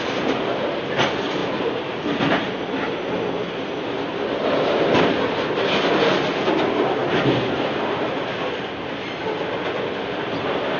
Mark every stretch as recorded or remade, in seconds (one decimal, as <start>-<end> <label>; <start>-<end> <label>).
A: 0.0-7.0 recorded; 7.0-8.5 remade; 8.5-10.8 recorded